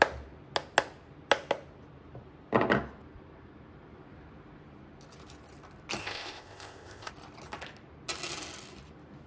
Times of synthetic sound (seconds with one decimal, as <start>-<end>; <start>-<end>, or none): 6.0-7.1